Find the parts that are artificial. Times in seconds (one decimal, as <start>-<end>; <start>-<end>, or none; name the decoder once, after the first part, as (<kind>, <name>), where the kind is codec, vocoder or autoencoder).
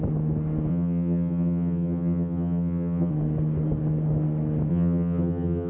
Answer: 0.7-3.1 (vocoder, HiFi-GAN); 4.7-5.7